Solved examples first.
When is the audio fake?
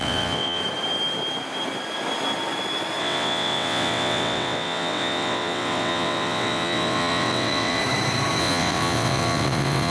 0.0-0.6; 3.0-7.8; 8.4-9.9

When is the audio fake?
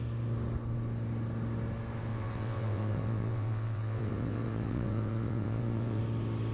2.1-6.0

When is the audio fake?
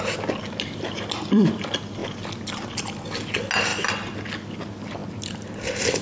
none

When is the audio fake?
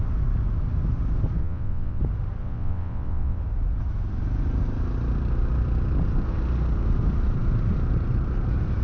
1.4-2.0; 2.4-3.4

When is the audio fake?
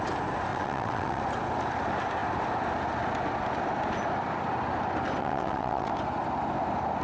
0.5-1.2; 5.2-5.9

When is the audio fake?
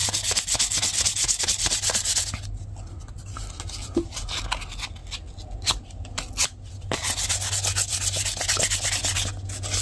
none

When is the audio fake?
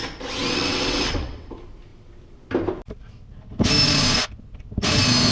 0.4-1.5